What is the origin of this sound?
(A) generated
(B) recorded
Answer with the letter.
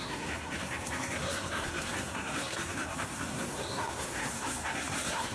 A